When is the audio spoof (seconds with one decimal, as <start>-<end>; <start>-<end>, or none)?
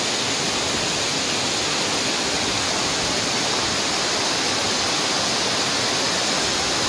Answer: none